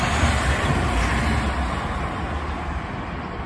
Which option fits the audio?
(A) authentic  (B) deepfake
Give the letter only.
A